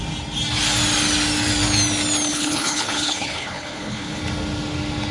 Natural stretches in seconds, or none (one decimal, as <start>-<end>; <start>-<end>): 0.0-2.3; 4.2-5.1